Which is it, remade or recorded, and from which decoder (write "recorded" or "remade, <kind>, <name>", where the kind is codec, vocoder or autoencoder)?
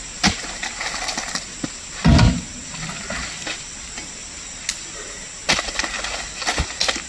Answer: recorded